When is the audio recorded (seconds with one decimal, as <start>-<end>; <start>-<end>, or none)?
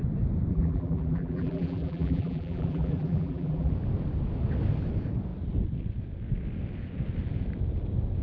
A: 0.0-0.5; 3.7-8.2